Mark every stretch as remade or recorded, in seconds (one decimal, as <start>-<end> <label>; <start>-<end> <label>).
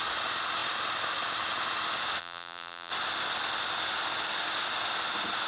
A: 0.0-2.2 recorded; 2.2-2.9 remade; 2.9-5.5 recorded